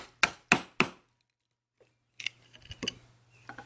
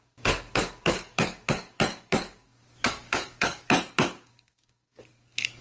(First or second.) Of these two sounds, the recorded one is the first